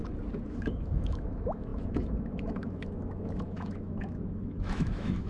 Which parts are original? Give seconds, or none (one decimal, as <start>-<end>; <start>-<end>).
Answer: 0.0-0.5